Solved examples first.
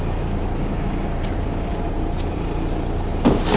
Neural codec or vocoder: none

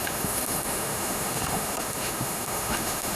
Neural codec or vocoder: autoencoder, DAC-VAE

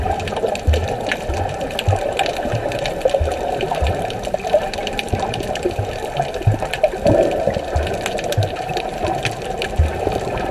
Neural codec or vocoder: none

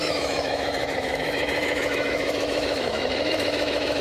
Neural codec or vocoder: autoencoder, DAC-VAE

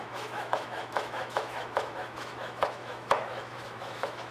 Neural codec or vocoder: autoencoder, DAC-VAE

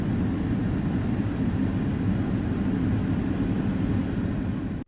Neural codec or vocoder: none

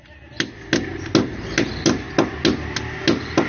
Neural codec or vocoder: none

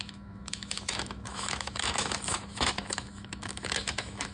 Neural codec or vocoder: autoencoder, DAC-VAE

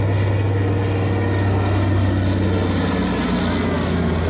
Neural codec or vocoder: none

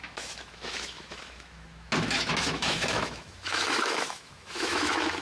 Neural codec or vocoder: autoencoder, DAC-VAE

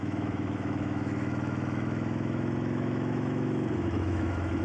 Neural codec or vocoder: autoencoder, DAC-VAE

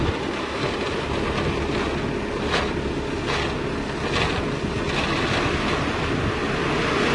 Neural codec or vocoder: none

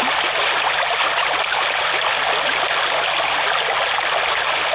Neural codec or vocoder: none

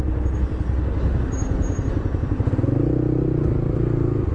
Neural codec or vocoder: none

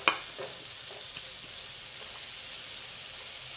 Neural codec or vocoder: none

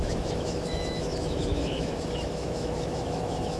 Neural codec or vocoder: autoencoder, DAC-VAE